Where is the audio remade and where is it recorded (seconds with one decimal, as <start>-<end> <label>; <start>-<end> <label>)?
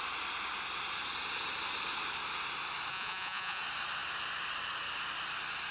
0.0-2.9 recorded; 2.9-3.6 remade; 3.6-5.7 recorded